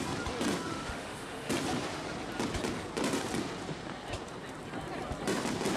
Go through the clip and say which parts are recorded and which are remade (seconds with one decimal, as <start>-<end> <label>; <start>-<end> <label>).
0.0-0.7 recorded; 0.7-1.5 remade; 1.5-5.8 recorded

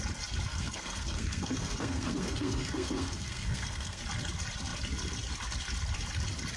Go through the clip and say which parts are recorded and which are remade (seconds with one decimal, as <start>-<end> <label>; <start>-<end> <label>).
0.0-0.5 recorded; 0.5-4.0 remade; 4.0-6.6 recorded